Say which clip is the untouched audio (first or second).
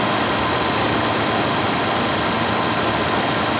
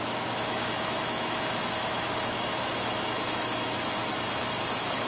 first